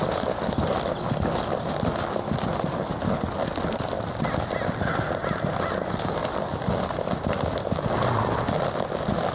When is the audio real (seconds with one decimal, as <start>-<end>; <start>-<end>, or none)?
0.0-9.3